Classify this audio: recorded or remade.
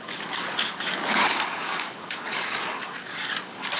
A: remade